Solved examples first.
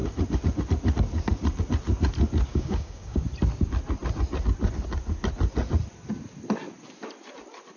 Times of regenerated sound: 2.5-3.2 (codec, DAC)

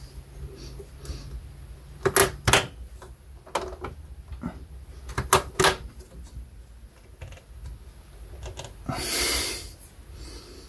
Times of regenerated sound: none

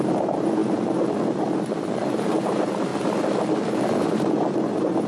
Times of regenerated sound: 0.0-2.9 (vocoder, BigVGAN v2); 4.0-5.1

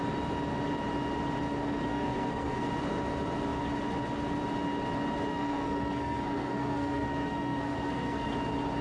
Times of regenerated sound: 1.9-2.7 (codec, SNAC); 5.3-8.3

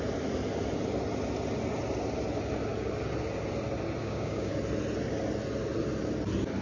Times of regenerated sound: 4.0-4.5 (codec, DAC)

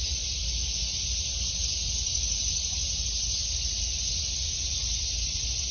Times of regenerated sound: none

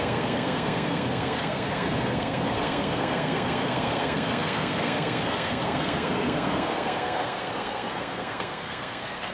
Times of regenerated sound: 0.0-9.3 (codec, SNAC)